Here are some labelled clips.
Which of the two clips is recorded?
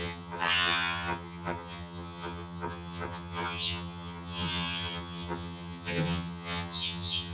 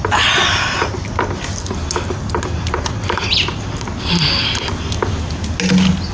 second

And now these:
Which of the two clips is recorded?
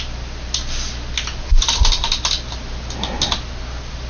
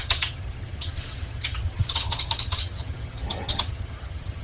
first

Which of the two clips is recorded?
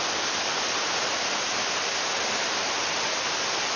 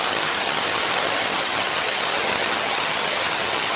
first